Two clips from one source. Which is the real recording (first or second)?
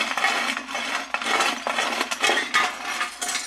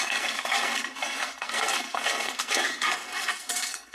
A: first